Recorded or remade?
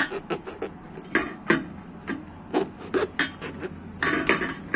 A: recorded